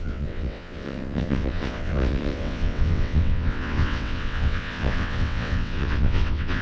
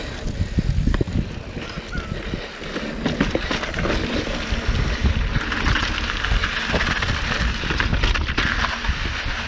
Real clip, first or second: second